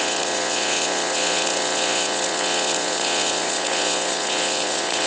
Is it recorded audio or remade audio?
remade